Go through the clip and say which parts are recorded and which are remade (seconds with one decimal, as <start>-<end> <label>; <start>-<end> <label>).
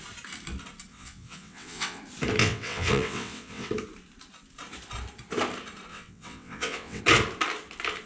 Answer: 0.0-0.9 recorded; 0.9-2.0 remade; 2.0-2.4 recorded; 2.4-3.7 remade; 3.7-5.9 recorded; 5.9-7.0 remade; 7.0-8.1 recorded